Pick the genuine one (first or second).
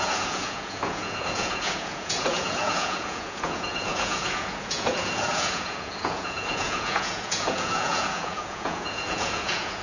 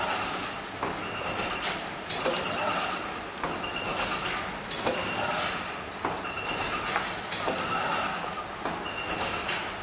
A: second